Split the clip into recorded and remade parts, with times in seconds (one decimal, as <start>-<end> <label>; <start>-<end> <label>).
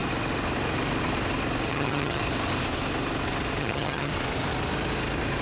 0.0-1.7 recorded; 1.7-2.2 remade; 2.2-3.6 recorded; 3.6-4.1 remade; 4.1-5.4 recorded